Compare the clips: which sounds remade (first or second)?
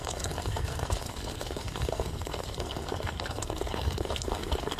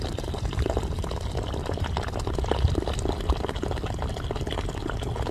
first